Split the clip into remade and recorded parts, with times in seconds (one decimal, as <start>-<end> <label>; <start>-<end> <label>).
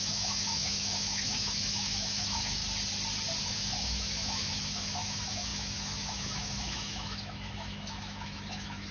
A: 0.0-2.6 remade; 2.6-3.4 recorded; 3.4-8.9 remade